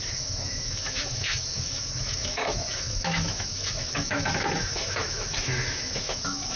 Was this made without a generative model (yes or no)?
no